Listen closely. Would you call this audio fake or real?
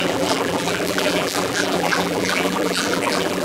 fake